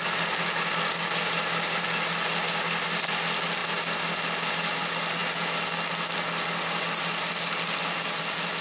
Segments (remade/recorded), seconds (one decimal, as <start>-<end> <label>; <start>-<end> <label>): 0.0-8.6 recorded